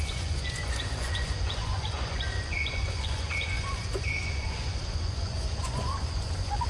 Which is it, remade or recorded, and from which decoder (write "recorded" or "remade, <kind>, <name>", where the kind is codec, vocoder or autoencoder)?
remade, vocoder, Vocos